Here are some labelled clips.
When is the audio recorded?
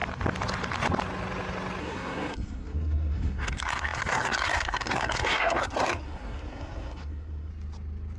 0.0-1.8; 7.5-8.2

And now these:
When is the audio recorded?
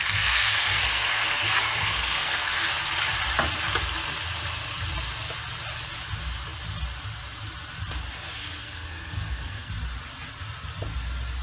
2.7-8.4; 9.7-11.4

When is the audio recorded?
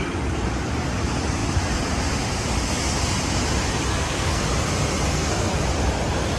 0.0-3.9; 4.5-5.1; 5.6-6.4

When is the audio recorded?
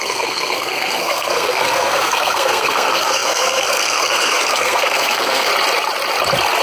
5.5-6.6